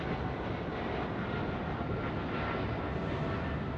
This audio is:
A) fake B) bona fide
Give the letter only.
B